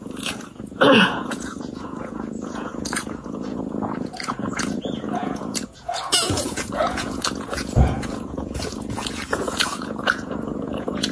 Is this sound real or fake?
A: fake